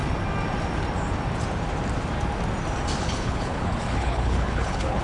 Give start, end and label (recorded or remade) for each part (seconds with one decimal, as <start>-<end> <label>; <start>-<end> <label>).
0.0-3.0 recorded; 3.0-5.0 remade